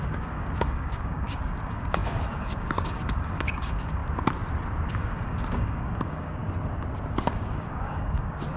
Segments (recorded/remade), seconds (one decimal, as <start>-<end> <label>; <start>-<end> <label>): 0.0-4.0 remade; 4.0-4.9 recorded; 4.9-6.4 remade; 6.4-7.1 recorded; 7.1-8.6 remade